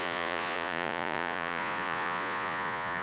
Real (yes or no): no